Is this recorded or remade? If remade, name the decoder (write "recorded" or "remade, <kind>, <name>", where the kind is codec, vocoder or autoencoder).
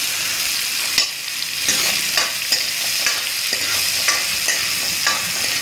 recorded